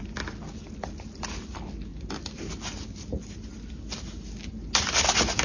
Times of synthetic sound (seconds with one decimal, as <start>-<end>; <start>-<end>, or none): none